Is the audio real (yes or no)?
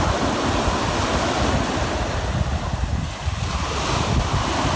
yes